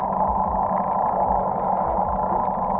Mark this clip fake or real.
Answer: real